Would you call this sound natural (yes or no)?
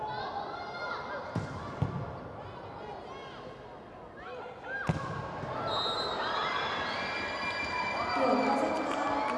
yes